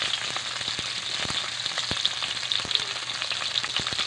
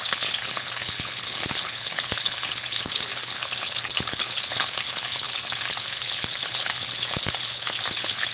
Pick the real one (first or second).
first